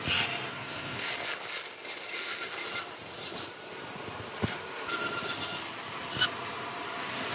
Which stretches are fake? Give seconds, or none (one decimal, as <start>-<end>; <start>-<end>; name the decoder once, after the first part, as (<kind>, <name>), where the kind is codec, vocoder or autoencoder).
0.5-1.1 (codec, SNAC)